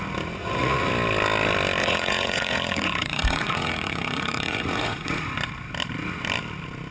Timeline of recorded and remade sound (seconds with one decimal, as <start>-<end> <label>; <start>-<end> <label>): 0.0-0.4 recorded; 0.4-0.9 remade; 0.9-1.8 recorded; 1.8-5.2 remade; 5.2-6.9 recorded